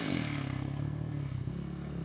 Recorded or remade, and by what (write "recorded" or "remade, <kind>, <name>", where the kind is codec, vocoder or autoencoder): remade, codec, SNAC